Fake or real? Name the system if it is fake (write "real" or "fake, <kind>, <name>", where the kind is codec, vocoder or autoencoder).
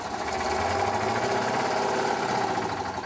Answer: real